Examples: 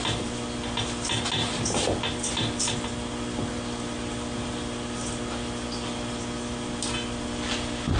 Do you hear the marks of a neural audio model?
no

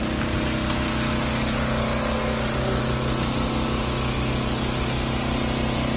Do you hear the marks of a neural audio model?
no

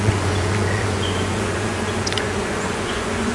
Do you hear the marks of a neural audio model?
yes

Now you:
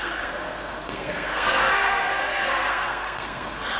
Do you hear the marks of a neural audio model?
yes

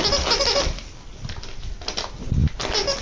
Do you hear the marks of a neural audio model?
no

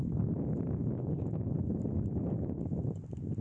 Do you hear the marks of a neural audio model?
no